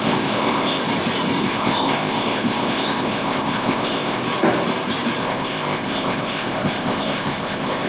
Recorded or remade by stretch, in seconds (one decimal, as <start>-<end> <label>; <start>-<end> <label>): 0.0-0.8 remade; 0.8-1.4 recorded; 1.4-4.2 remade; 4.2-5.2 recorded; 5.2-7.9 remade